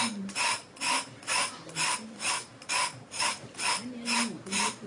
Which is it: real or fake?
fake